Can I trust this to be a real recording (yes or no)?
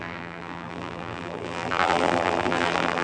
no